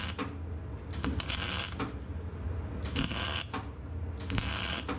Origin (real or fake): real